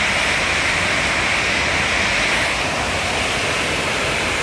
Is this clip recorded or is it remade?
recorded